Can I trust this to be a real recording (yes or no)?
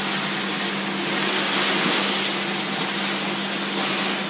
yes